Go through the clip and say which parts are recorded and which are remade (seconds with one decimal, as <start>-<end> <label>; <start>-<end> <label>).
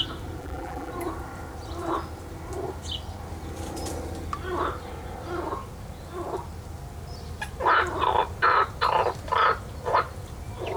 0.0-0.4 recorded; 0.4-0.9 remade; 0.9-10.8 recorded